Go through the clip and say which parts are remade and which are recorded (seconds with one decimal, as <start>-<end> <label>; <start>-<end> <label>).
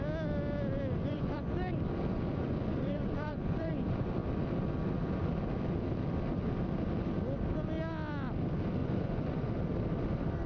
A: 0.0-1.0 recorded; 1.0-1.5 remade; 1.5-2.3 recorded; 2.3-3.7 remade; 3.7-8.8 recorded; 8.8-9.5 remade; 9.5-10.5 recorded